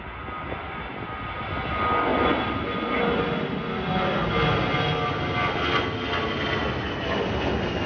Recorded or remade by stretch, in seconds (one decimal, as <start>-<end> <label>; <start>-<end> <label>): 0.0-7.9 recorded